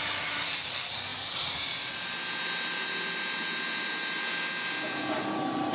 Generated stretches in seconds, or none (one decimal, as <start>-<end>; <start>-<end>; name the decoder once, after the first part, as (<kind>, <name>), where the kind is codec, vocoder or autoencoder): none